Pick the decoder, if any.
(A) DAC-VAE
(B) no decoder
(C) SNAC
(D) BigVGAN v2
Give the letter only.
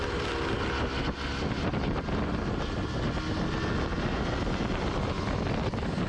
B